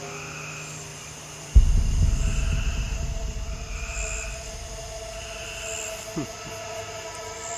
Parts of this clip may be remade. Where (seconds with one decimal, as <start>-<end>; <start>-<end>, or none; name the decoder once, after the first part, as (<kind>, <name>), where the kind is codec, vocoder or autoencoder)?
0.9-1.6 (vocoder, BigVGAN v2)